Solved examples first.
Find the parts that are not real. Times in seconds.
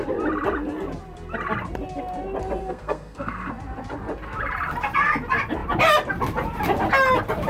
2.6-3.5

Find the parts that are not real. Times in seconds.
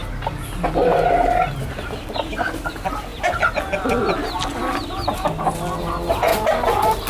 none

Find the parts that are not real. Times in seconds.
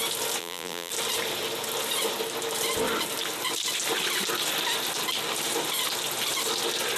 0.4-0.9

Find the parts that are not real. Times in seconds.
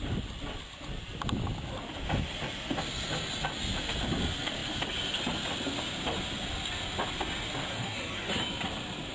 7.7-8.4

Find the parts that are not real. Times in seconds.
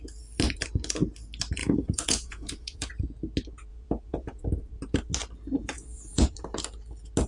1.6-2.9; 3.7-4.4; 5.6-6.2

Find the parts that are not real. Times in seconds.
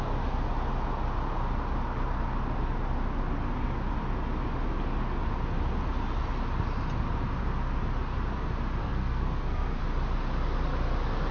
8.8-9.8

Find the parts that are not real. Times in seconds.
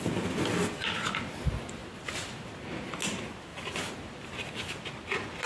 1.8-3.0; 3.5-4.5